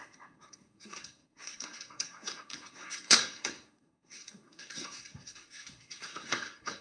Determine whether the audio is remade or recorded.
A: remade